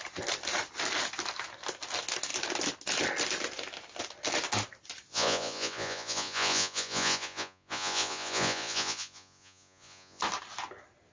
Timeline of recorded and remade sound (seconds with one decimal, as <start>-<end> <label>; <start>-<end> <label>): 0.0-5.1 recorded; 5.1-10.2 remade; 10.2-11.1 recorded